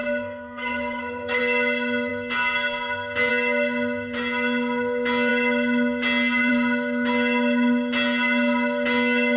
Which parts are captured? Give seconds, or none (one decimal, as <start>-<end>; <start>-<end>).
1.4-9.4